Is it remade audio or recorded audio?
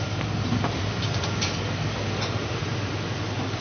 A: remade